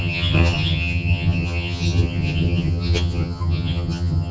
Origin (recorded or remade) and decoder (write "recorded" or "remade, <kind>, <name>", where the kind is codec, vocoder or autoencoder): remade, vocoder, HiFi-GAN